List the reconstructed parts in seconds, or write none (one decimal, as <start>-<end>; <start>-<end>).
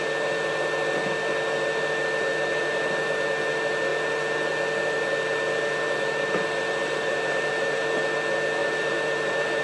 6.8-8.0; 8.6-9.6